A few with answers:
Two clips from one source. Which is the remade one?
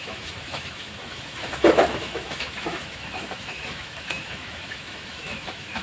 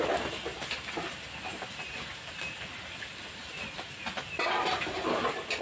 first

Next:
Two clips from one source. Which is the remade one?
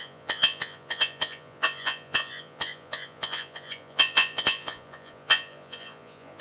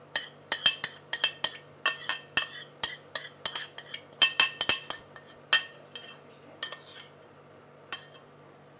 first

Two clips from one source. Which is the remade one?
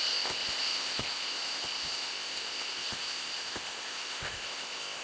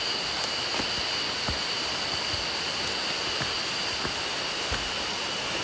first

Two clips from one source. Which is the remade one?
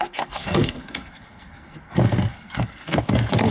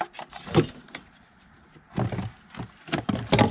first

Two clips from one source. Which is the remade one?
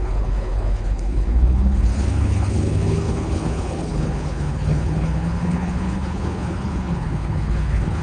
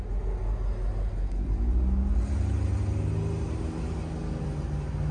first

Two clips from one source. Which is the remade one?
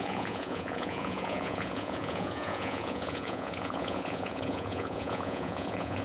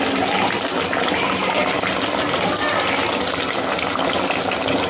first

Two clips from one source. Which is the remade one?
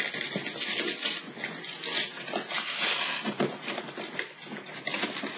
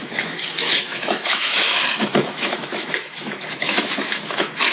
second